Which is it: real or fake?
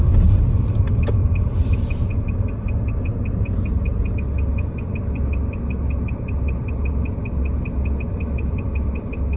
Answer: real